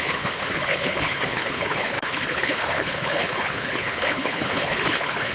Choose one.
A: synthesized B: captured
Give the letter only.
A